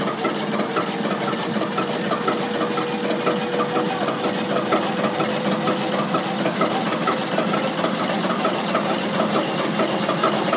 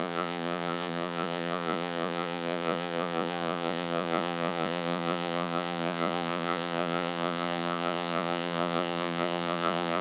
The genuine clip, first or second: first